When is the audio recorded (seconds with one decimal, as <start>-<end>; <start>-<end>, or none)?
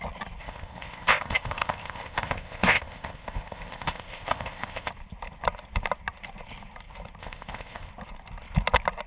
0.0-0.4; 4.9-7.2; 7.9-9.1